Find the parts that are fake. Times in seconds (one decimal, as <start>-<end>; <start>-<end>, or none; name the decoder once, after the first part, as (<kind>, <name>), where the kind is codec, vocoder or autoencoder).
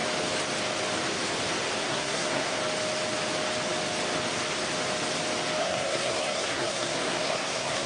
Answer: 1.8-2.6 (codec, SNAC); 5.6-7.9